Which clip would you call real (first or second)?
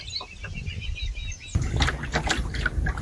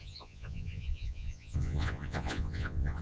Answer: first